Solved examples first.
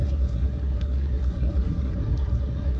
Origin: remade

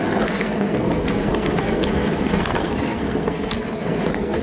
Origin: remade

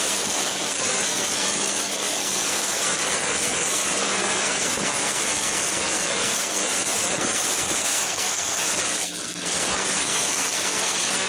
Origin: remade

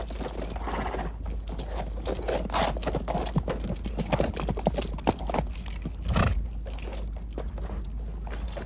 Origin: recorded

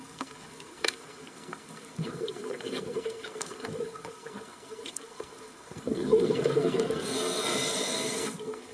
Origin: remade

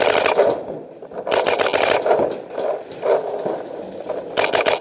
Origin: recorded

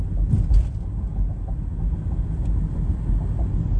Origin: recorded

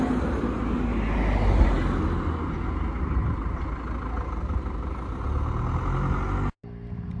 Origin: recorded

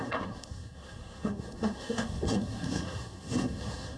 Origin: remade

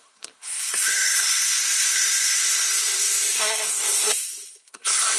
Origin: remade